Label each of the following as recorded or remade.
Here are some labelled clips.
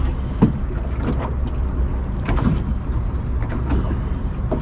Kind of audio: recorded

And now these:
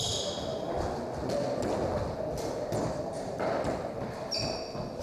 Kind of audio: recorded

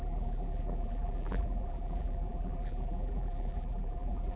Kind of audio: remade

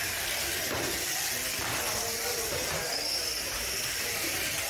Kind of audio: recorded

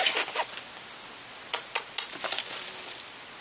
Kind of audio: recorded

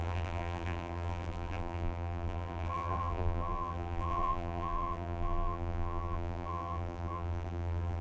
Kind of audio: remade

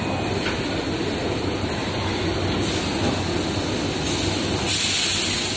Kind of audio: recorded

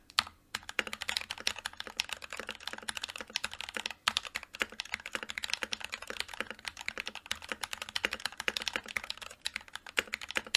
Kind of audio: remade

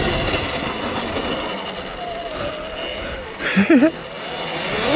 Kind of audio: recorded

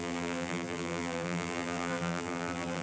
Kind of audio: remade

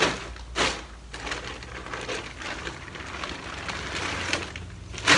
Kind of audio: recorded